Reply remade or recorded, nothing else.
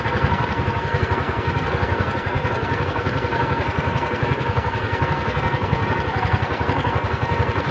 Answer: remade